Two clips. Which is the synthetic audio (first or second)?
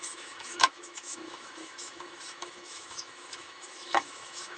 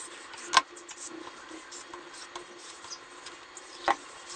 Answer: first